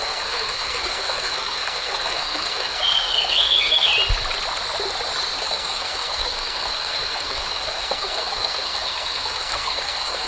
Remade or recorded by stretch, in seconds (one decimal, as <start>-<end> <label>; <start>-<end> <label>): 0.0-3.9 remade; 3.9-5.4 recorded; 5.4-10.3 remade